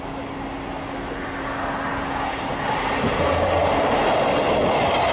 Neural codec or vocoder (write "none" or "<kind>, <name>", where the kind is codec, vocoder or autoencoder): none